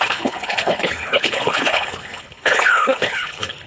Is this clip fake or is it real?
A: fake